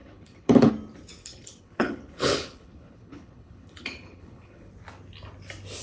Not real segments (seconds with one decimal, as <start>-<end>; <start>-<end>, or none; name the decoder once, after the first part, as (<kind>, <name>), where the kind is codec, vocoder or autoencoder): 0.0-0.7 (codec, HILCodec); 1.2-4.7